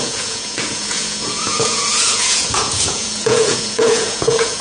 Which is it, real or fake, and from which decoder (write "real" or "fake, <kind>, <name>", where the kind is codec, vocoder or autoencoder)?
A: fake, vocoder, Vocos